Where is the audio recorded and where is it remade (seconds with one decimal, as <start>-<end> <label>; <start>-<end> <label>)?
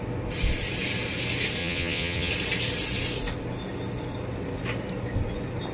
0.0-1.6 recorded; 1.6-2.3 remade; 2.3-5.7 recorded